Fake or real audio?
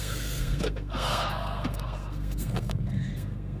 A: fake